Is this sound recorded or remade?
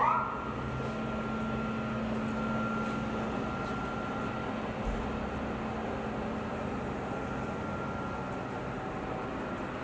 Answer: recorded